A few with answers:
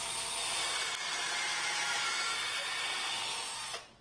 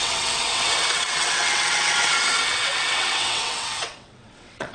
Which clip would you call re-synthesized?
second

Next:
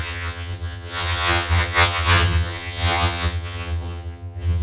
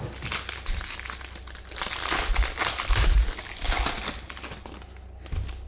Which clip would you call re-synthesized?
first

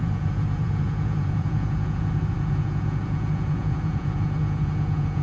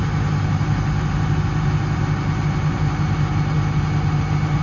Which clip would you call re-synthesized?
first